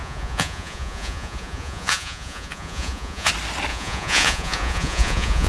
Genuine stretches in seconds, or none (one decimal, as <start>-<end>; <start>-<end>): 3.3-3.7